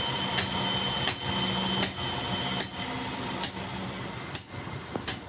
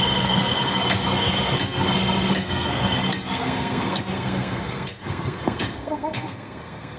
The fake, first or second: second